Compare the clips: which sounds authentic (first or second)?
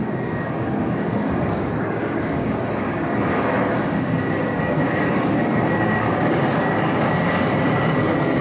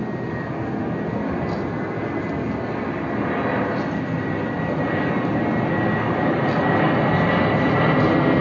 second